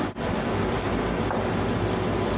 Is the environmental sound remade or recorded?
recorded